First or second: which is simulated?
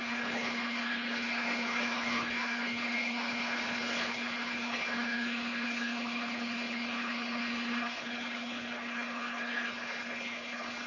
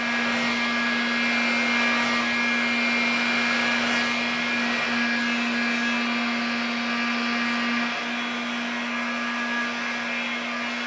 first